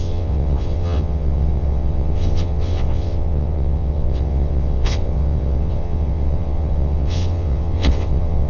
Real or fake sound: fake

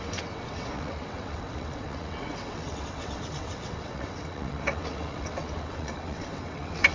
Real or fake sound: fake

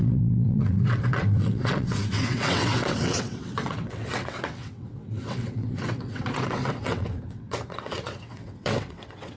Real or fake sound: fake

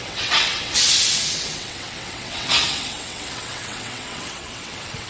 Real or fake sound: fake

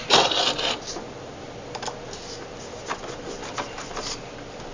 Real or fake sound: real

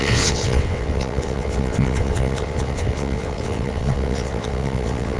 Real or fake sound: fake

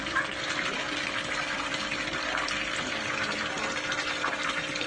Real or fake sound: real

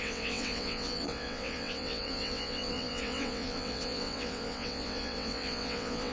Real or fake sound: fake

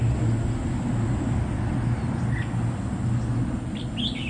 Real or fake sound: real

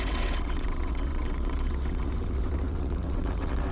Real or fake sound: fake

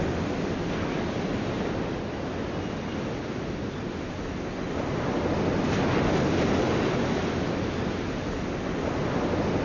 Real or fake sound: real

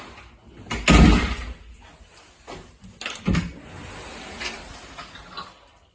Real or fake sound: real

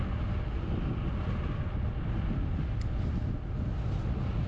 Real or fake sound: real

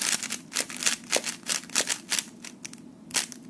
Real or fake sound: real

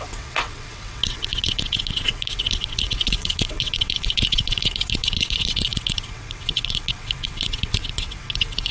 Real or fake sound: fake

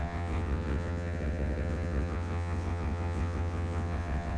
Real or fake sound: fake